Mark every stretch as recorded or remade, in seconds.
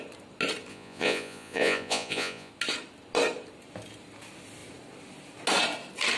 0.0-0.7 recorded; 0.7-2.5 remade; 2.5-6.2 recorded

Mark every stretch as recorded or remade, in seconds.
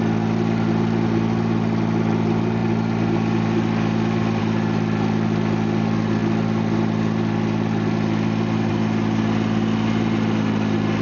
0.0-11.0 recorded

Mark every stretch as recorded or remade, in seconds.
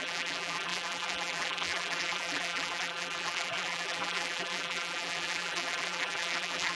0.0-6.8 remade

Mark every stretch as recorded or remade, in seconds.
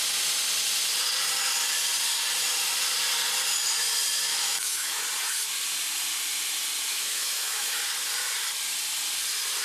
0.0-4.3 recorded; 4.3-5.0 remade; 5.0-6.9 recorded; 6.9-7.8 remade; 7.8-9.6 recorded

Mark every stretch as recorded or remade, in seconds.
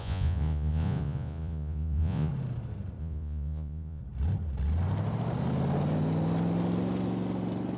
0.0-2.3 remade; 2.3-3.0 recorded; 3.0-4.0 remade; 4.0-7.8 recorded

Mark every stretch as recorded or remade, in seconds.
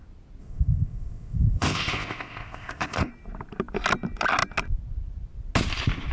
0.0-0.4 recorded; 0.4-3.1 remade; 3.1-6.1 recorded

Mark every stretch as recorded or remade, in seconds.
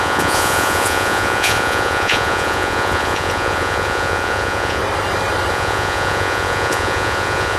0.0-4.8 remade; 4.8-5.5 recorded; 5.5-7.6 remade